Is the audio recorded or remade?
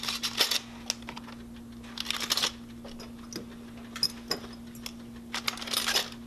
recorded